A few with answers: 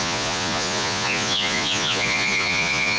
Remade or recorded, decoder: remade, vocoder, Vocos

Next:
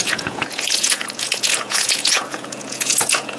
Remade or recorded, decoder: remade, vocoder, Vocos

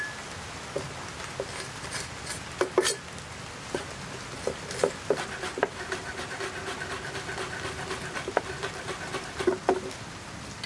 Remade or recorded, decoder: recorded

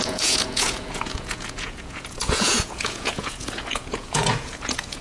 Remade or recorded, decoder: remade, vocoder, Vocos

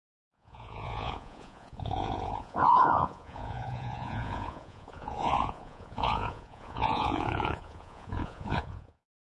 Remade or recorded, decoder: remade, vocoder, Vocos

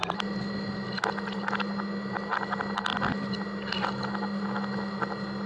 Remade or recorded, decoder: recorded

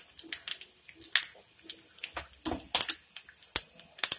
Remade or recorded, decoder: recorded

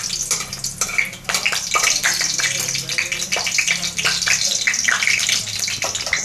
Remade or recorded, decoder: recorded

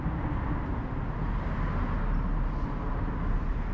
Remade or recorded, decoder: recorded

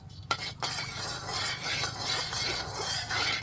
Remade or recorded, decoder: recorded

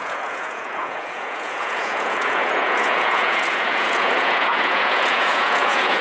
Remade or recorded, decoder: remade, vocoder, Vocos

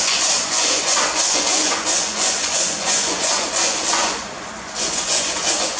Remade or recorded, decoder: remade, vocoder, Vocos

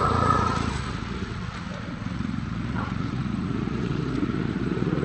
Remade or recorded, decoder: remade, vocoder, Vocos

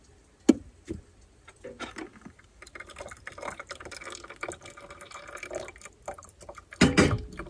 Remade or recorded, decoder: recorded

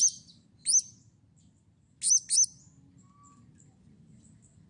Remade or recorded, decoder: recorded